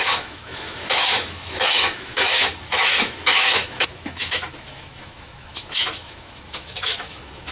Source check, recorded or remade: remade